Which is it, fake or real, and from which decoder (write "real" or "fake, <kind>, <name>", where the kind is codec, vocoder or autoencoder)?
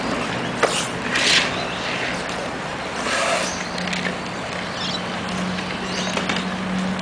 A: real